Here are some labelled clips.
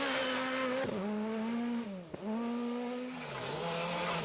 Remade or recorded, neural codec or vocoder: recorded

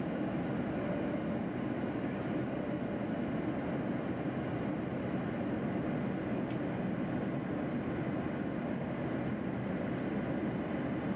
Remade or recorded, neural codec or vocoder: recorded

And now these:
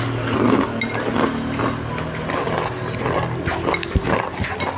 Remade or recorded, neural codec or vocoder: recorded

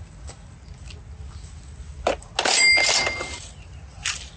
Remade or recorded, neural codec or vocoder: recorded